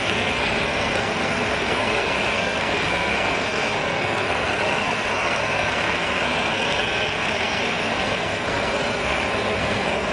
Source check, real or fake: fake